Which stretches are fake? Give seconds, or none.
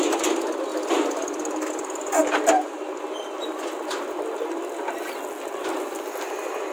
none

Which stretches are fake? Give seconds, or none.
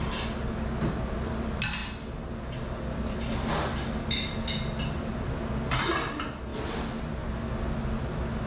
none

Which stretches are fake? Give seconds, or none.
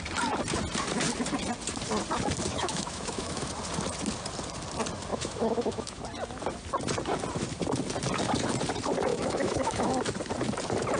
2.5-3.5; 5.1-6.0; 9.1-9.9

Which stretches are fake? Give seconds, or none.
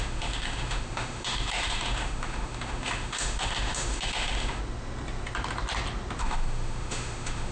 0.0-4.6; 6.2-7.5